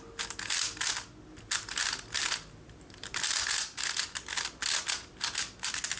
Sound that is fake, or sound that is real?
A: real